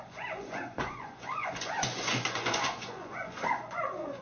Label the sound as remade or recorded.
remade